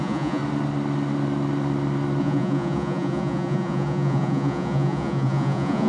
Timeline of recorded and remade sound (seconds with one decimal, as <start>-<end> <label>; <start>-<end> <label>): 0.0-0.4 remade; 0.4-2.2 recorded; 2.2-5.9 remade